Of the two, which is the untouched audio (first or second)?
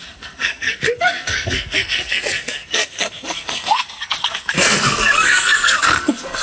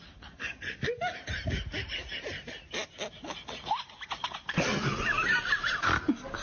second